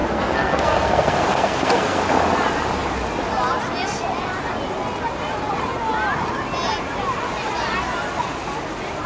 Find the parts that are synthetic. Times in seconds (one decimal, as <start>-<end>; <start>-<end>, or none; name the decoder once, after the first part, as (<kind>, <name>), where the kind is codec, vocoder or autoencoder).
0.0-2.0 (codec, SNAC)